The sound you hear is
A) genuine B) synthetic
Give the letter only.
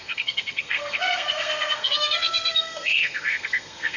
B